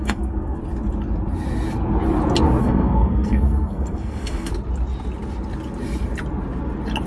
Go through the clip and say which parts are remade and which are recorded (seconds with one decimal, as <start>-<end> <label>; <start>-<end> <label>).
0.0-0.6 remade; 0.6-2.6 recorded; 2.6-4.5 remade; 4.5-7.1 recorded